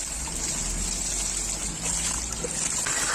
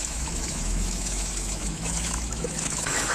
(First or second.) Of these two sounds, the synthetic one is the second